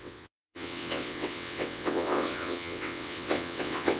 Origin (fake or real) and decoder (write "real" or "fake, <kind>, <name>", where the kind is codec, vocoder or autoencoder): fake, vocoder, WaveNeXt